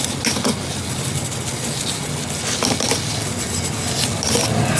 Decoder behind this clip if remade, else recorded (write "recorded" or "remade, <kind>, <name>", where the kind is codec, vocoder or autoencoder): recorded